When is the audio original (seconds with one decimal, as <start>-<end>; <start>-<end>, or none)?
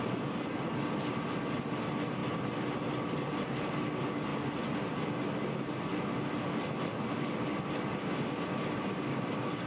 0.0-9.7